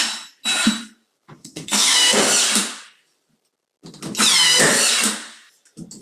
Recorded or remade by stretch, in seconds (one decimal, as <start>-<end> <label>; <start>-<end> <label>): 0.0-1.4 recorded; 1.4-2.2 remade; 2.2-6.0 recorded